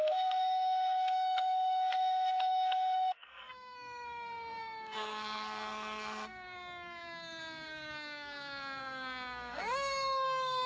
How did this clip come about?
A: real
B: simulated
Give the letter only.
B